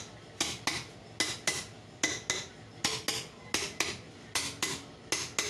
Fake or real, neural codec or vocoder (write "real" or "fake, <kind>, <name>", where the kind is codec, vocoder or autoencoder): real